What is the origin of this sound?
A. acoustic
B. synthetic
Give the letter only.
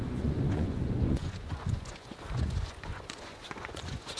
B